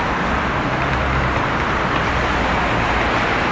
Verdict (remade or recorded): recorded